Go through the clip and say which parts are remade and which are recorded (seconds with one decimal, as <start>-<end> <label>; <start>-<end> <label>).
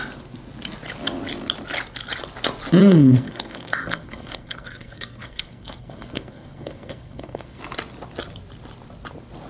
0.0-2.8 recorded; 2.8-7.6 remade; 7.6-9.5 recorded